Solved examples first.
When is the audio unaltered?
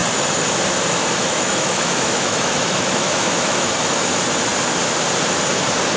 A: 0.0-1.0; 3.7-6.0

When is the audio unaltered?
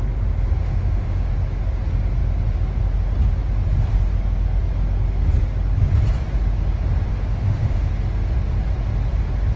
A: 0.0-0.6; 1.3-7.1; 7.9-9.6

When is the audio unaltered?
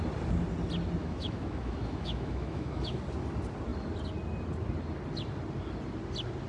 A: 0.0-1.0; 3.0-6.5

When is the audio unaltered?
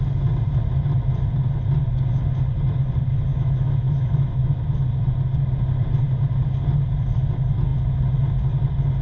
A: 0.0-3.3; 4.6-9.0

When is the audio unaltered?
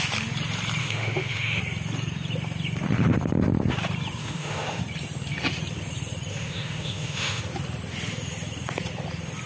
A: 0.0-0.8; 1.6-4.2; 4.8-6.3; 7.4-9.5